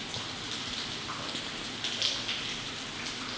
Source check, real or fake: real